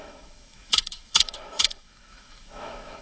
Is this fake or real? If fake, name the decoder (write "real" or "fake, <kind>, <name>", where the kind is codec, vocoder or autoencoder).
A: fake, autoencoder, DAC-VAE